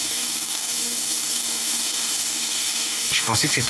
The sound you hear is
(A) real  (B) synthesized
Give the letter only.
B